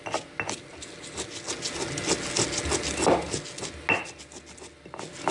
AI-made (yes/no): no